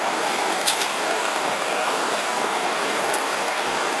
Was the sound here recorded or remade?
remade